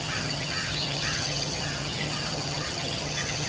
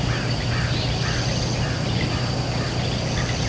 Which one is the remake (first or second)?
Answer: first